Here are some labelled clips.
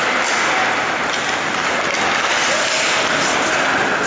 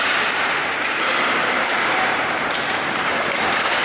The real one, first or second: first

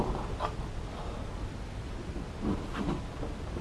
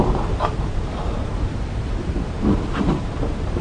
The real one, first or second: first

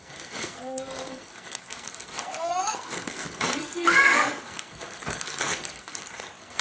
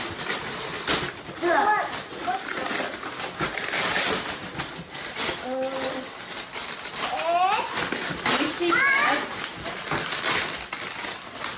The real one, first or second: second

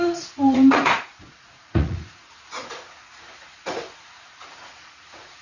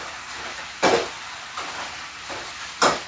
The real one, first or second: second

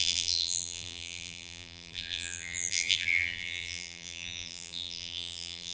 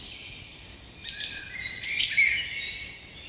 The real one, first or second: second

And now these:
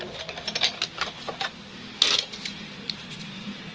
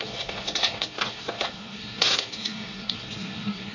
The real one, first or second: first